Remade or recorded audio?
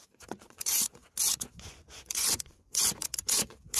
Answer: remade